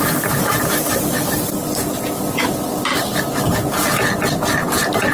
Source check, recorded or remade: recorded